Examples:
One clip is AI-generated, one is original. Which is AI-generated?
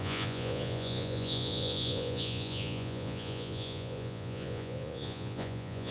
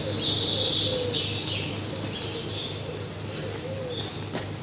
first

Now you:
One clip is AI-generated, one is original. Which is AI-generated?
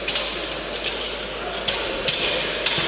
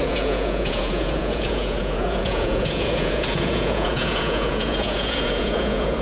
second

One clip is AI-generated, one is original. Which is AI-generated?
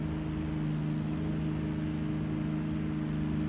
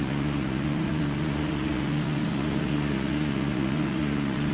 second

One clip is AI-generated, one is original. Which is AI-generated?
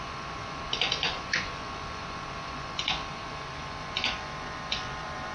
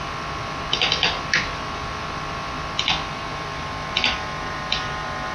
first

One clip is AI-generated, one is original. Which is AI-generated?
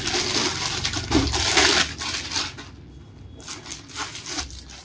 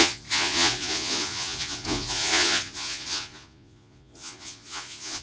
second